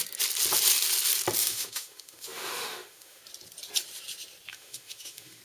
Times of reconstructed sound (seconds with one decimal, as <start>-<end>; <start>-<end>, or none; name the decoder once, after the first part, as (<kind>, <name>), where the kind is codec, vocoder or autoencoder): 1.4-3.2 (autoencoder, DAC-VAE); 4.5-5.4